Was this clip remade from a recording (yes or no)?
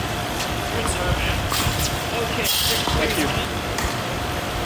yes